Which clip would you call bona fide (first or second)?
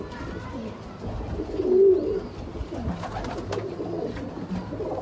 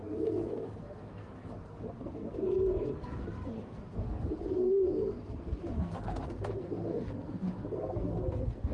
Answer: first